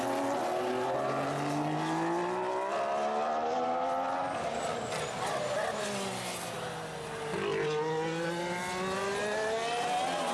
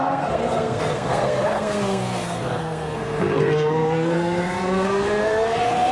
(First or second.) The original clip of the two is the first